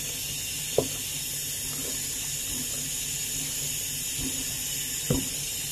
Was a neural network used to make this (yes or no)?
no